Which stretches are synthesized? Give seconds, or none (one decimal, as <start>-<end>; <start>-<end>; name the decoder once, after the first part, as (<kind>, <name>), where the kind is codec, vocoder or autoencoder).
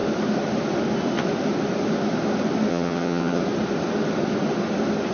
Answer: 2.7-3.4 (vocoder, HiFi-GAN)